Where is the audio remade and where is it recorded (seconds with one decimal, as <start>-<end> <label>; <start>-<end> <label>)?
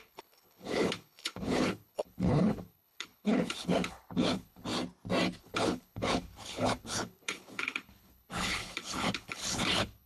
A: 0.0-4.7 remade; 4.7-5.4 recorded; 5.4-10.1 remade